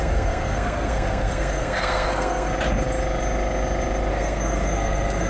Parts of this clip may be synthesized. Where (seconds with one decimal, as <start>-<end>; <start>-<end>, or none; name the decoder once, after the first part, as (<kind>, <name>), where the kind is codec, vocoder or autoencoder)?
0.0-2.5 (codec, SNAC); 4.1-5.3